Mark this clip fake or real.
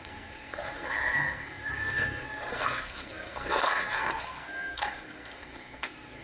fake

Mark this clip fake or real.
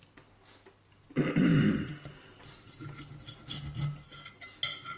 real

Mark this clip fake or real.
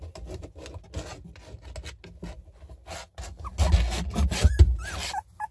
real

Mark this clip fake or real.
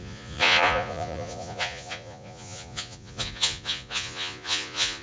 fake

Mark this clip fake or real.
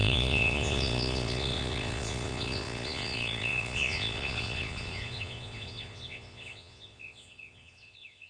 fake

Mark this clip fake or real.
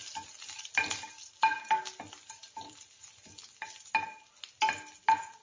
real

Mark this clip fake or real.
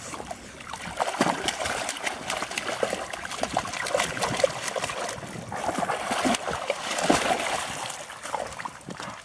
real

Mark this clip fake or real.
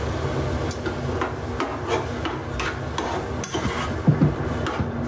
real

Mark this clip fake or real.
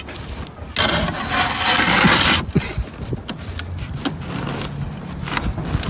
real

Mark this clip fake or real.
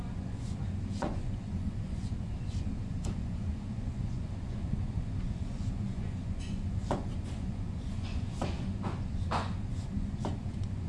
fake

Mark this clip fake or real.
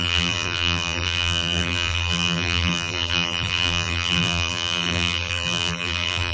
fake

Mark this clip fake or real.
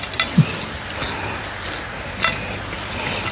real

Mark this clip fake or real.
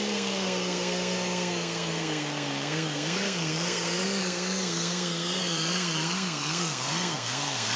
fake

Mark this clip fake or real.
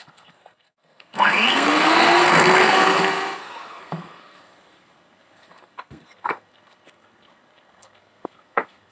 fake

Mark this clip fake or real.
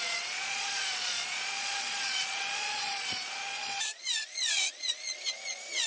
fake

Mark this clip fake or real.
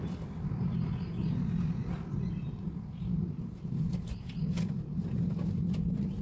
real